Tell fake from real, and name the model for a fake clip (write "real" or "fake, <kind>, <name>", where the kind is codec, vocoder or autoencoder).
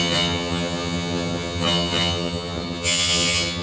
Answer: fake, vocoder, HiFi-GAN